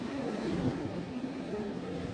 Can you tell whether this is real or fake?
fake